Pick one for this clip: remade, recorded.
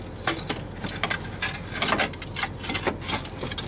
recorded